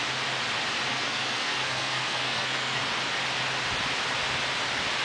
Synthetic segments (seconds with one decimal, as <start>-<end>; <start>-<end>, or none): 0.9-2.8